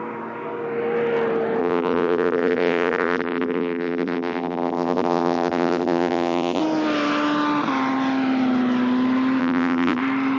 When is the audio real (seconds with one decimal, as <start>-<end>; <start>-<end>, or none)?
0.0-1.6; 6.6-9.4; 10.0-10.4